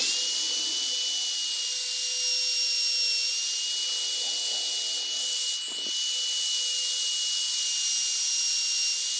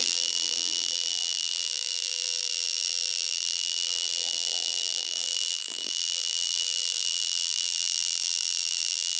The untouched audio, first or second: first